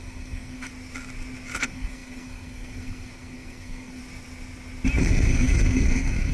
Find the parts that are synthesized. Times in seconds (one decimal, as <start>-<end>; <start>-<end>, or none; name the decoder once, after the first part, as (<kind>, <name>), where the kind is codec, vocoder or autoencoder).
0.0-0.7 (codec, SNAC); 1.6-4.0; 5.0-6.3